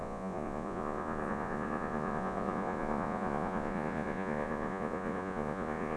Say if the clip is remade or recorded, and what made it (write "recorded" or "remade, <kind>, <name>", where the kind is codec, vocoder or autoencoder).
remade, vocoder, Vocos